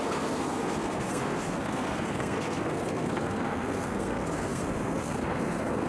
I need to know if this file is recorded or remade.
remade